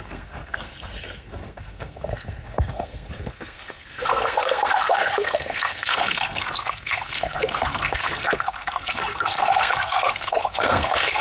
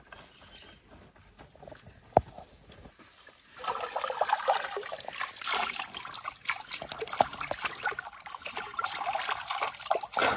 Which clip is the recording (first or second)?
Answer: second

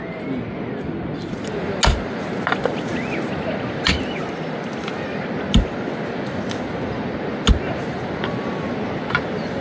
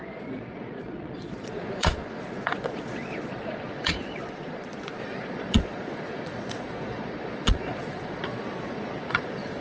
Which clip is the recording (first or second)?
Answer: first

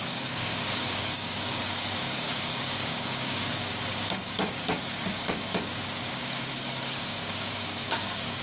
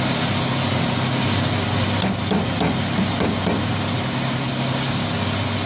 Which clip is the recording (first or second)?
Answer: second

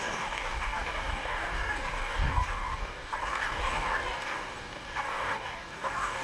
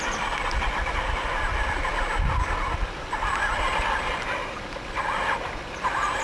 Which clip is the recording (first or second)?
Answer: second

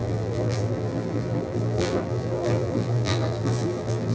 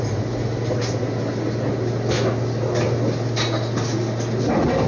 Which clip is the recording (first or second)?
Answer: second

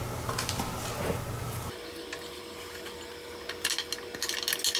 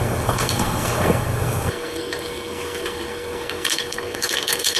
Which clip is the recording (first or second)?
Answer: first